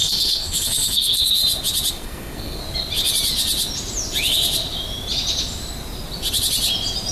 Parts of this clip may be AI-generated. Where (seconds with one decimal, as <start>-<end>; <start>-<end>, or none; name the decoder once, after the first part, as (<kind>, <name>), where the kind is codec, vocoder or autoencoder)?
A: 0.0-1.4 (codec, SNAC); 1.9-2.6

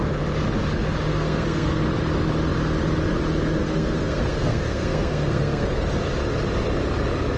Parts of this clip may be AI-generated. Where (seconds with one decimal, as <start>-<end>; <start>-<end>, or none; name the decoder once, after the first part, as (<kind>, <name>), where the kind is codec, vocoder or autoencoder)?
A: 1.1-1.8 (codec, SNAC); 3.6-5.8

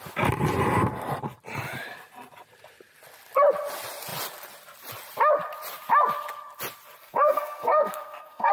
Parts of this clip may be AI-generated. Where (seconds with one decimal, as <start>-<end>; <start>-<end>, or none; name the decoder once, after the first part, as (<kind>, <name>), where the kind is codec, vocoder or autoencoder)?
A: 7.0-8.5 (codec, SNAC)

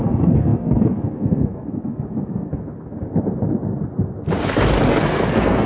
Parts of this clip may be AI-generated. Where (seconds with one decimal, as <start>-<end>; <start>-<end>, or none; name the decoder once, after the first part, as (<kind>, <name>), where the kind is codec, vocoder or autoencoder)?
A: 0.0-2.5 (codec, SNAC); 4.9-5.7

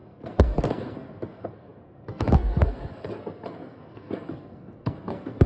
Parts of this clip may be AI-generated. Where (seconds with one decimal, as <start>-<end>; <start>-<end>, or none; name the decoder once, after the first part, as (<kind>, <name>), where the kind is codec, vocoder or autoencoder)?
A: 0.0-5.5 (codec, SNAC)

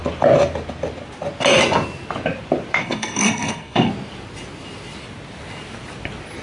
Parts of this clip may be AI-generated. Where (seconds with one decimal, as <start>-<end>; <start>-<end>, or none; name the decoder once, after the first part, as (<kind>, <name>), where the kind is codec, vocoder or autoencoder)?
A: 2.8-3.9 (codec, SNAC)